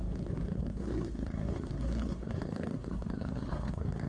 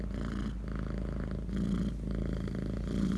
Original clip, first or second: second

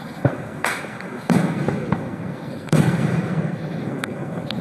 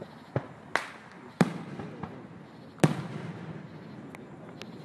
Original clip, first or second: second